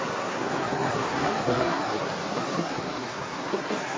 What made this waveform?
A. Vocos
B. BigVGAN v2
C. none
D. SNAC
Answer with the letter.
D